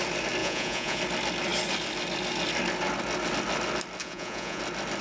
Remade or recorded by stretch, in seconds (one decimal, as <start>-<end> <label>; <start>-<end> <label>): 0.0-0.4 recorded; 0.4-1.0 remade; 1.0-4.0 recorded; 4.0-4.6 remade; 4.6-5.0 recorded